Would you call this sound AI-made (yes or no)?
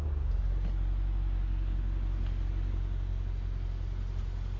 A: no